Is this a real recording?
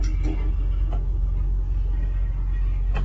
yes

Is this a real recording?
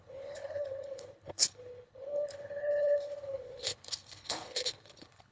no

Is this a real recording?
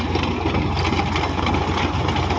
yes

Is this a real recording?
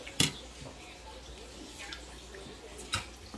yes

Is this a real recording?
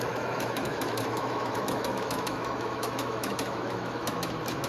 no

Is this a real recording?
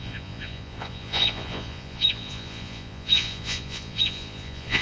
no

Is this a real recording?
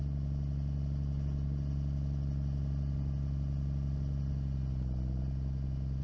yes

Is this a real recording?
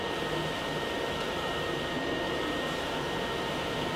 yes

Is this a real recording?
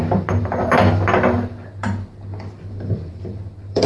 no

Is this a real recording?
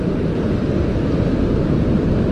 yes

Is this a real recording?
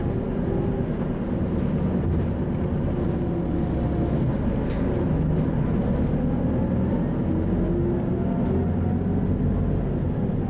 yes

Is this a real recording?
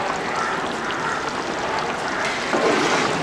yes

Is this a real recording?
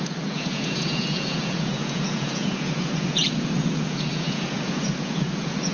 no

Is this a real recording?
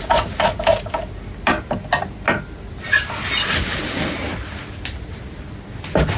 yes